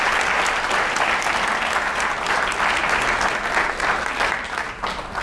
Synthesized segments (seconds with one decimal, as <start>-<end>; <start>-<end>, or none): none